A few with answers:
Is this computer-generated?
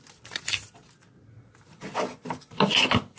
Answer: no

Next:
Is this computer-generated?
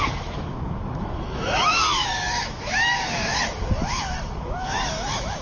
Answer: yes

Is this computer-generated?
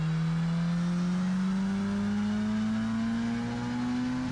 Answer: no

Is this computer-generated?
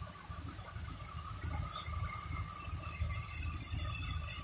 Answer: no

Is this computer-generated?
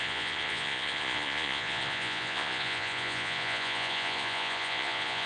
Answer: yes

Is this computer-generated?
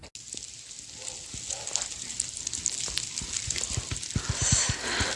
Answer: no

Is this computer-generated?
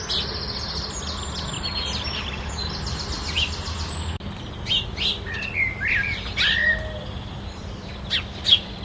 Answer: no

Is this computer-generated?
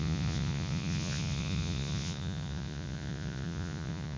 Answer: yes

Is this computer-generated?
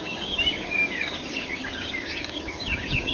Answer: yes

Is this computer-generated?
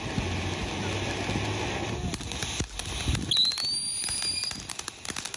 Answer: no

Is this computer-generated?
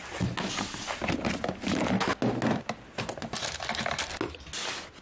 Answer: no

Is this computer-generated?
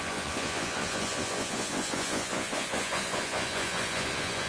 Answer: yes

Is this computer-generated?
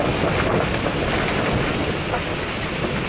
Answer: no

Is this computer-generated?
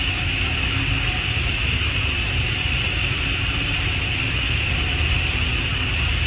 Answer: no